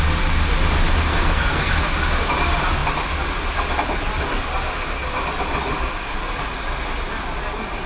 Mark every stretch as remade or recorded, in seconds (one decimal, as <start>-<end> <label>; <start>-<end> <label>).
0.0-1.1 recorded; 1.1-1.8 remade; 1.8-7.9 recorded